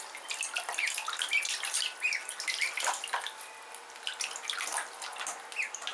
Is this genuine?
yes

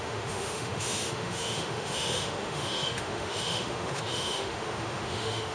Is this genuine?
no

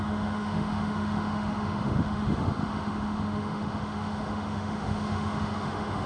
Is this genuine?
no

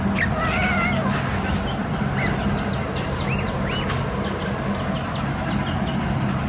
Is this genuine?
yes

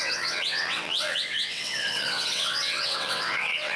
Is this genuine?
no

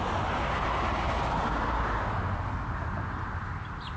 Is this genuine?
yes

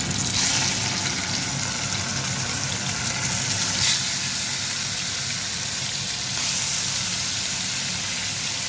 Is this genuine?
yes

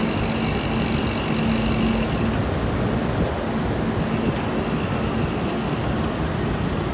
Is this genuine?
yes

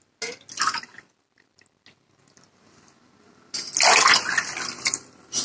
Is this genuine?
yes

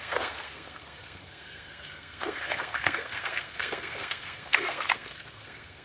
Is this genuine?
no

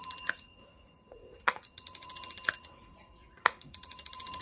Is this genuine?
no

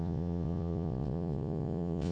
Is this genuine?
no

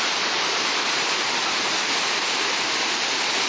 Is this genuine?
yes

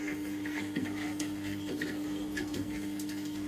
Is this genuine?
no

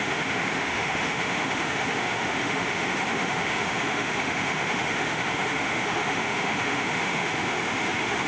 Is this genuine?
no